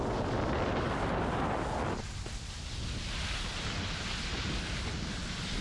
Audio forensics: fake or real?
real